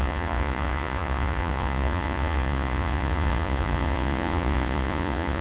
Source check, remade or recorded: remade